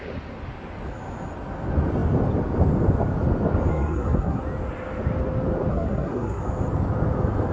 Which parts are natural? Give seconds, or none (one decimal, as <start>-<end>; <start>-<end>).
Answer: 0.0-3.7; 4.4-5.7; 6.4-7.5